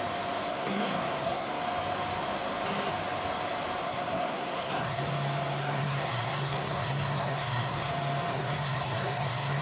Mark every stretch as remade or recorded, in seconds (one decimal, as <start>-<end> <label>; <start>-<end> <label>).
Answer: 0.0-0.5 recorded; 0.5-1.6 remade; 1.6-3.8 recorded; 3.8-5.0 remade; 5.0-5.6 recorded; 5.6-7.9 remade; 7.9-8.3 recorded; 8.3-9.6 remade